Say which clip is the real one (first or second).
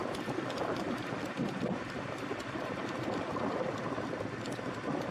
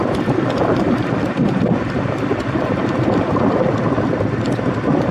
first